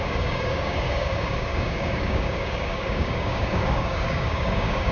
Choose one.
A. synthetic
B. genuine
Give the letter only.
A